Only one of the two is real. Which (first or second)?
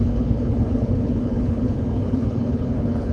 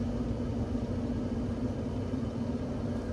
second